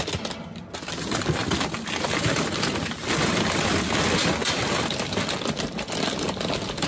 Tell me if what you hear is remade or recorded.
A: recorded